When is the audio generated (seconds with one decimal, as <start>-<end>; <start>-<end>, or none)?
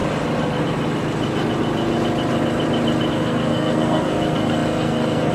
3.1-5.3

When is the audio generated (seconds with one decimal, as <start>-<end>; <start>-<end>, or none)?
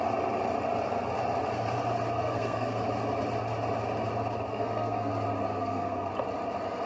2.2-2.8; 4.5-5.1; 5.6-6.1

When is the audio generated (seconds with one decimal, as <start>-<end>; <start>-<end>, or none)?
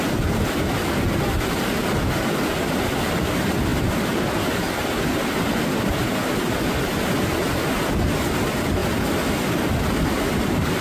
none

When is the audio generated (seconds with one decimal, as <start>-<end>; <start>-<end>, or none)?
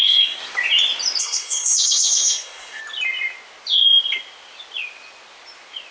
0.0-0.4; 1.2-2.8